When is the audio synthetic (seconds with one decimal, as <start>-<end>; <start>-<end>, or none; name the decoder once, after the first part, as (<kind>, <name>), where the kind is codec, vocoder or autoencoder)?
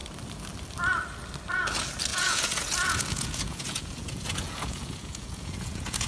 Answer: 2.1-6.1 (vocoder, Vocos)